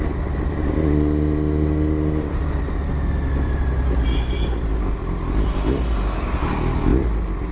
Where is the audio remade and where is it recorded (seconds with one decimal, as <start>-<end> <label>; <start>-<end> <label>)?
0.0-7.5 recorded